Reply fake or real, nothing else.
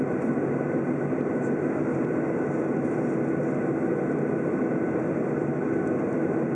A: real